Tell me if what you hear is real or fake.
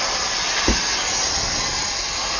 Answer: real